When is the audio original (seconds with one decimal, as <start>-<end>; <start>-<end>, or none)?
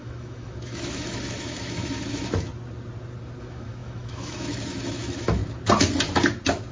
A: 2.5-3.4; 5.4-6.7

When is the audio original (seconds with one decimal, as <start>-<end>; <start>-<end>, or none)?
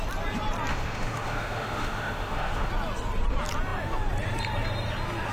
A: 0.0-0.7; 2.7-5.3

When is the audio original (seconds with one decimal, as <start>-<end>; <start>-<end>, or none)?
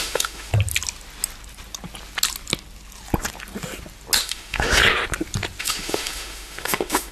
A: 0.5-4.2; 4.8-5.6